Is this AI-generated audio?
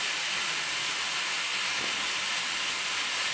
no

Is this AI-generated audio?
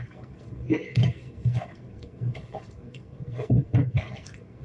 yes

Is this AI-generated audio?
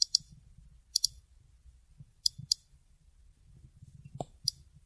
no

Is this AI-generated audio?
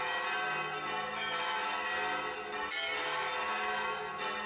no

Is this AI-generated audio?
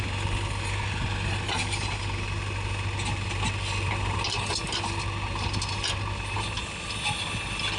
no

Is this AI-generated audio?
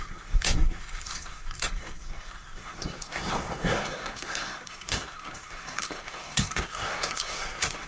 yes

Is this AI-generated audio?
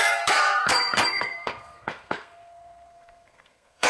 yes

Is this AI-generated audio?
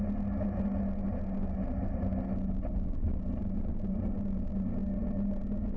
no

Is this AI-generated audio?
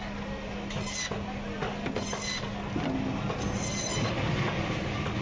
no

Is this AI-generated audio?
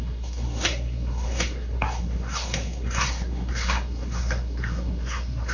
yes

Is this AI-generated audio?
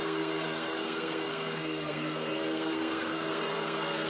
yes